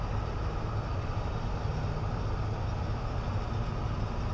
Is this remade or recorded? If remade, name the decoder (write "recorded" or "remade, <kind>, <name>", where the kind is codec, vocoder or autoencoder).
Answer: recorded